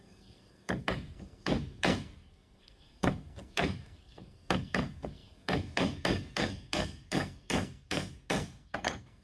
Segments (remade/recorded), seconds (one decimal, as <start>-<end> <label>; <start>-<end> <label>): 0.0-9.2 remade